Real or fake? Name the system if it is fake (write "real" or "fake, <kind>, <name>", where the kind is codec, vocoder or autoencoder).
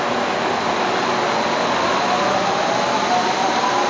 real